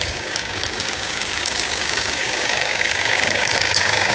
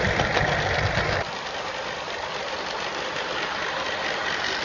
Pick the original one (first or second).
second